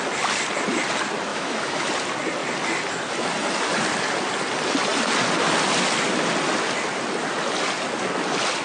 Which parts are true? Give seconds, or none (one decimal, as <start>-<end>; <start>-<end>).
0.0-1.3; 1.9-8.6